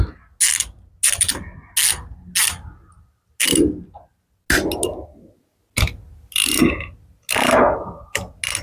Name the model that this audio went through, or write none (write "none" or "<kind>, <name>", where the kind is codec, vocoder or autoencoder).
none